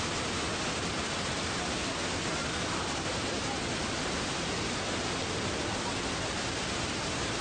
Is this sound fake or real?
real